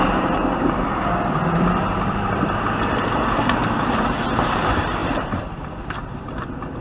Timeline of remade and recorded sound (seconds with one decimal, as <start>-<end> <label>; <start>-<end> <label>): 0.0-0.4 remade; 0.4-2.1 recorded; 2.1-6.8 remade